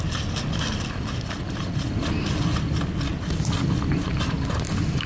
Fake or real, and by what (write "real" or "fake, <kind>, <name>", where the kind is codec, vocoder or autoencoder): real